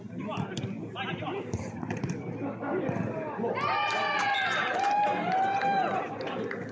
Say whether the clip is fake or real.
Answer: real